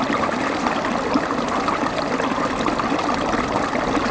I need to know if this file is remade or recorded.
recorded